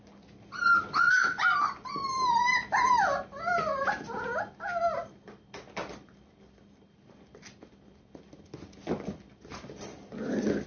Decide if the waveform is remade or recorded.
recorded